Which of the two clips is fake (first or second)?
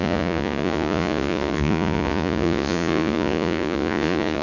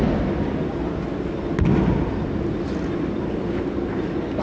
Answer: first